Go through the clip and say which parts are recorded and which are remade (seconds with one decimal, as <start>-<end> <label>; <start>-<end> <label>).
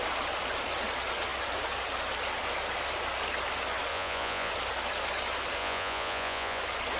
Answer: 0.0-3.9 recorded; 3.9-4.5 remade; 4.5-5.6 recorded; 5.6-6.6 remade; 6.6-7.0 recorded